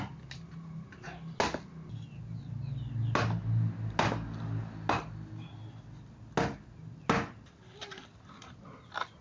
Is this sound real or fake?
real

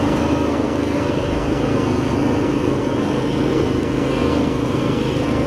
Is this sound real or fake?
fake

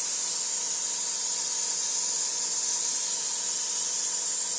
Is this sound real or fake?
real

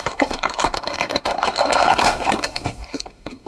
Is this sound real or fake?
fake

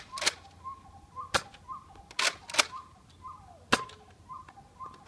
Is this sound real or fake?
real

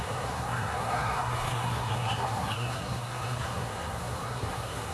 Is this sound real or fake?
fake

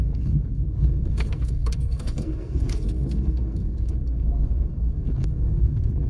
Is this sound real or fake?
fake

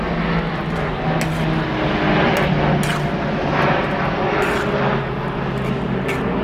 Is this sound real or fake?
real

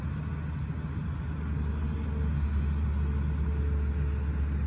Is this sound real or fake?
real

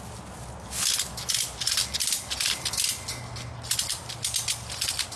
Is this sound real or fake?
real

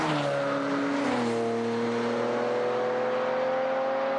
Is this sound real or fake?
real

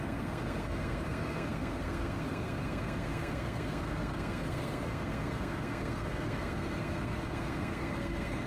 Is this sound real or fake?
fake